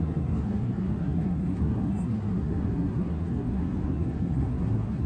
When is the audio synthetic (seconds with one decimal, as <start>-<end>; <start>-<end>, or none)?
0.0-5.1